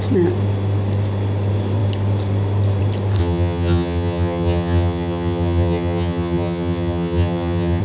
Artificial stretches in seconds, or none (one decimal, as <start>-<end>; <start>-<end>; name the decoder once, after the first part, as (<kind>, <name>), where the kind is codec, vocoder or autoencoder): 3.2-7.8 (vocoder, HiFi-GAN)

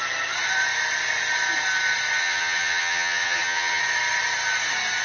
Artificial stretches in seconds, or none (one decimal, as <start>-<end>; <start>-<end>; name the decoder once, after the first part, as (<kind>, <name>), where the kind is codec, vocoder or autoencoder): 2.2-3.8 (vocoder, HiFi-GAN)

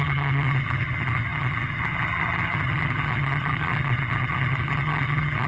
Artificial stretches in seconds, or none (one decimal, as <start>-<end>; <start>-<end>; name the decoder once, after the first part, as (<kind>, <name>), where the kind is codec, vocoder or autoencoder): 0.0-5.5 (vocoder, HiFi-GAN)